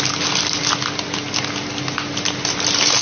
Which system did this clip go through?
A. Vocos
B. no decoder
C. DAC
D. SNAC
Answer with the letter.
B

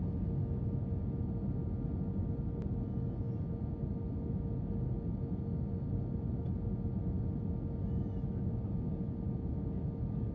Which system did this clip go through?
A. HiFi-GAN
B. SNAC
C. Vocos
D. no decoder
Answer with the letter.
D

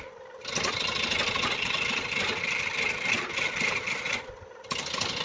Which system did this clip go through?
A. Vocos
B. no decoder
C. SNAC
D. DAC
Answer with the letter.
B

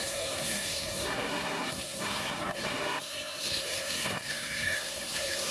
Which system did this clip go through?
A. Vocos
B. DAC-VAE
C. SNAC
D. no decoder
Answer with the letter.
C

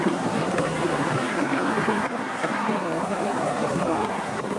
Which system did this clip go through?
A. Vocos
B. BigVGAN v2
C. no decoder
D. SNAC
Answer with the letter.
D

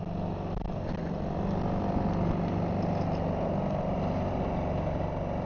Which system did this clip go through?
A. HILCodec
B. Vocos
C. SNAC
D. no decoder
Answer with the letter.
D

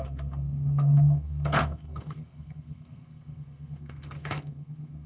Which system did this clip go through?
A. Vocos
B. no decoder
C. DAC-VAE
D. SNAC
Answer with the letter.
D